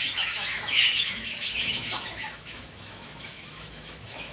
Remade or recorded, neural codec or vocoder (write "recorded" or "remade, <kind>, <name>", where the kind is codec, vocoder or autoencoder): remade, autoencoder, DAC-VAE